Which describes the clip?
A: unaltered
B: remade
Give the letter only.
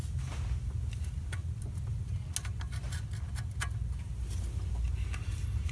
A